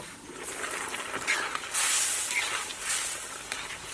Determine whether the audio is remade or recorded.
recorded